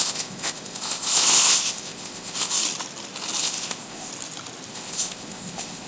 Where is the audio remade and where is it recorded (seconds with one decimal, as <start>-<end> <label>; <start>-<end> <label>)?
0.0-2.6 remade; 2.6-3.4 recorded; 3.4-4.1 remade; 4.1-4.7 recorded; 4.7-5.9 remade